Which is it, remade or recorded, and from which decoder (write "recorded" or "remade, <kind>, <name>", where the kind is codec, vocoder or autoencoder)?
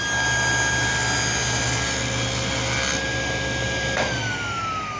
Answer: recorded